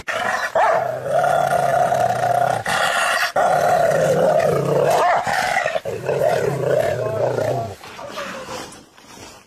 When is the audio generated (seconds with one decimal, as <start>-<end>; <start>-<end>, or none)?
1.7-2.3